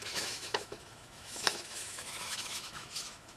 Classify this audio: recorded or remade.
remade